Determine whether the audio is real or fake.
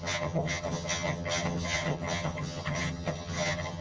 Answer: fake